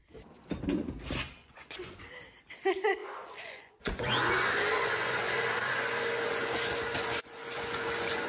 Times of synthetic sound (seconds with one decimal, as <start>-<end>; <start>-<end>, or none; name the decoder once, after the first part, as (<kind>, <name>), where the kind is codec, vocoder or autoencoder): 1.4-2.0 (vocoder, Vocos); 3.0-8.3